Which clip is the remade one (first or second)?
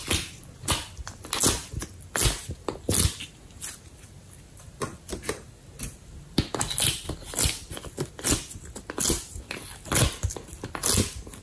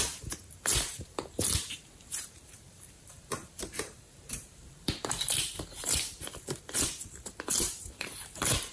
second